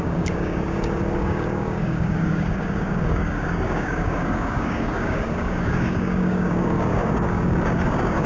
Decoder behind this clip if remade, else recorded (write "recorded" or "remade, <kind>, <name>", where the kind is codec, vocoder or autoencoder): remade, codec, DAC